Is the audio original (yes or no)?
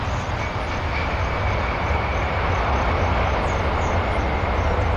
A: yes